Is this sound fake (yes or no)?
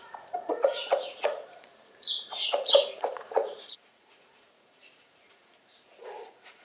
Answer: yes